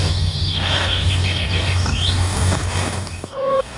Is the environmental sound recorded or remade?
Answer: remade